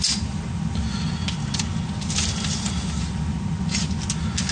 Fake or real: real